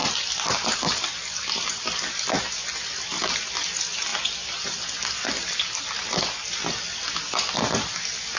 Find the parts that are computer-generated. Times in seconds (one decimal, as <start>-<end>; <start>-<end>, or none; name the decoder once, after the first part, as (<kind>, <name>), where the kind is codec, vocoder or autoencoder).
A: none